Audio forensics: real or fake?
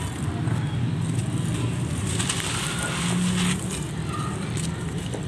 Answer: real